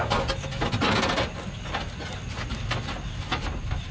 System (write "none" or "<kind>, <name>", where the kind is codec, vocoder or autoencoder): none